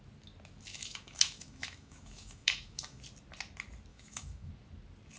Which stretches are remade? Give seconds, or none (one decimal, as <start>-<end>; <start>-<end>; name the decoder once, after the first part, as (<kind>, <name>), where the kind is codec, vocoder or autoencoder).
0.7-3.0 (autoencoder, DAC-VAE); 3.9-4.5